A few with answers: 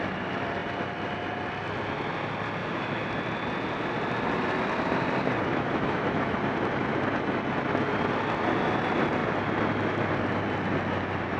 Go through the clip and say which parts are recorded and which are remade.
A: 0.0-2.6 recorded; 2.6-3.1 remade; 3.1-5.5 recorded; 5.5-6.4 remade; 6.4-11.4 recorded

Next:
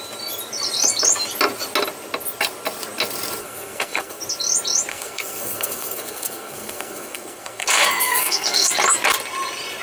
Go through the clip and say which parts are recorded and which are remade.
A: 0.0-3.4 recorded; 3.4-4.2 remade; 4.2-4.9 recorded; 4.9-8.7 remade; 8.7-9.8 recorded

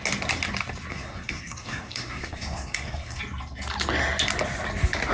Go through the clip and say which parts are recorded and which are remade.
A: 0.0-0.9 recorded; 0.9-3.2 remade; 3.2-5.1 recorded